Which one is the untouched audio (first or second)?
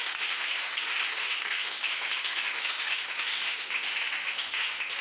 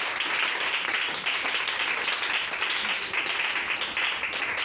second